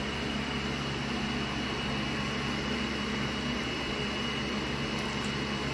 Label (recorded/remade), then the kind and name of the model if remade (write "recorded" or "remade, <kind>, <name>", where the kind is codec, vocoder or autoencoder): recorded